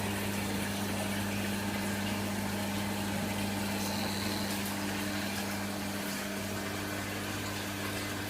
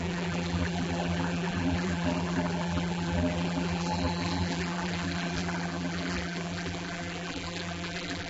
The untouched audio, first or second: first